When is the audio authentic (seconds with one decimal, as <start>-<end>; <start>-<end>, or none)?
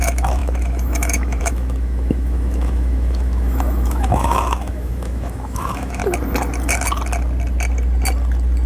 6.0-8.7